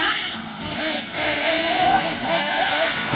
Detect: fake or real fake